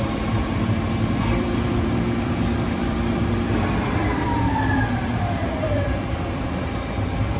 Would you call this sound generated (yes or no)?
yes